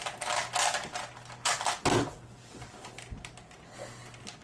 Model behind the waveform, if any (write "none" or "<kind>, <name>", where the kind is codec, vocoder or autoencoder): none